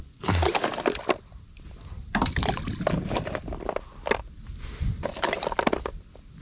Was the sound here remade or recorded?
recorded